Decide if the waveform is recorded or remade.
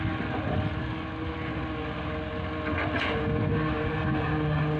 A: recorded